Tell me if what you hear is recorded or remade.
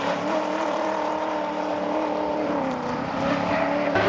remade